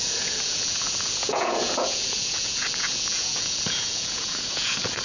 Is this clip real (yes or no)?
no